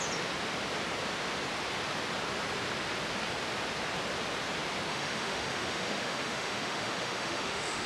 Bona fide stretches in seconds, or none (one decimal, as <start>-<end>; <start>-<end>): 0.0-4.9